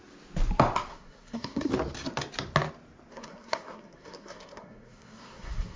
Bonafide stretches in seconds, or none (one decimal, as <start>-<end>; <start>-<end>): 0.0-0.9; 1.7-3.1